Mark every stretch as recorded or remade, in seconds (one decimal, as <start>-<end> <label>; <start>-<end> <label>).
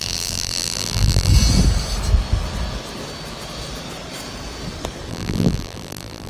0.0-1.3 remade; 1.3-5.1 recorded; 5.1-6.3 remade